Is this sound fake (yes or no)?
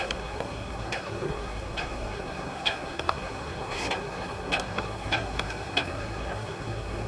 yes